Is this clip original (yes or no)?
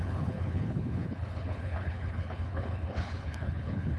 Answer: no